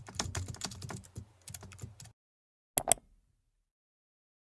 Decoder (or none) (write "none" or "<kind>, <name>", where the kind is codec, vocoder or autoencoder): none